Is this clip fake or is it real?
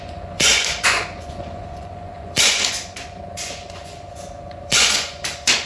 fake